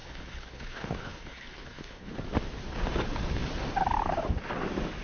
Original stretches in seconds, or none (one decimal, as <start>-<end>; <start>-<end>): 2.1-5.0